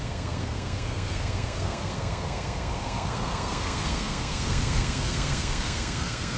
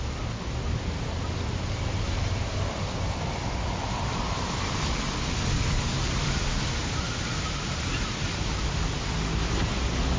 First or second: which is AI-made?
first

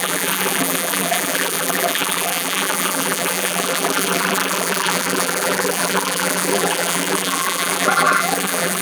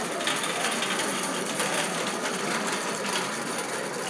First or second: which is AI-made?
first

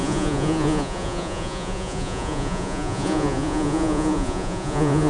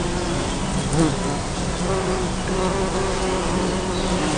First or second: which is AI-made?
first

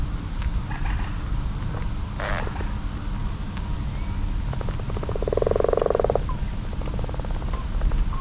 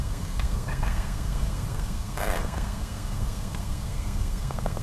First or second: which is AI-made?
second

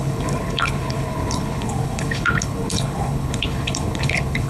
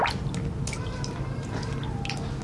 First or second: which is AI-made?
first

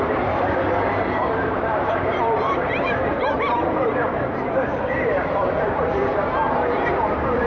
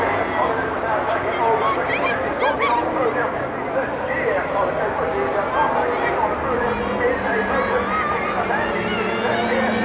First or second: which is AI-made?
first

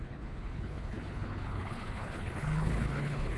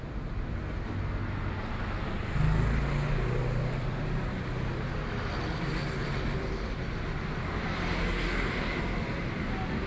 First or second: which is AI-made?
first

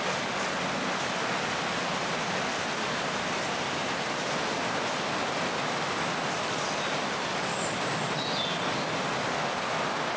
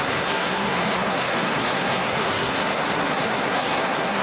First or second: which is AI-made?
second